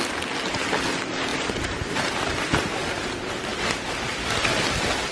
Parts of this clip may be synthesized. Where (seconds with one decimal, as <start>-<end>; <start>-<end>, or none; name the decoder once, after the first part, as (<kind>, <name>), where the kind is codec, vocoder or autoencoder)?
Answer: 1.3-3.0 (vocoder, BigVGAN v2)